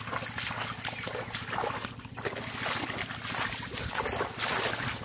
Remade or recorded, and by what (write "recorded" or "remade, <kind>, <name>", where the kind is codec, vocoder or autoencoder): recorded